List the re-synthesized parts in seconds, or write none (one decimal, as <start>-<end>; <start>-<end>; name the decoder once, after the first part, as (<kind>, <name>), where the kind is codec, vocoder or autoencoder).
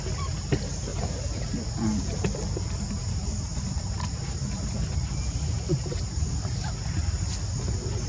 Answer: 0.9-1.4 (vocoder, BigVGAN v2); 3.0-6.7